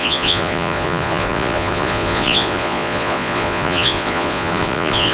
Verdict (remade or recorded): remade